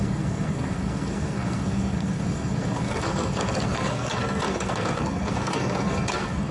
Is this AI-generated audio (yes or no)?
yes